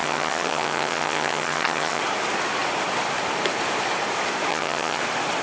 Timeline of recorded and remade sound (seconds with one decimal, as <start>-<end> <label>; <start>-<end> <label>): 0.0-2.0 remade; 2.0-4.5 recorded; 4.5-5.0 remade; 5.0-5.4 recorded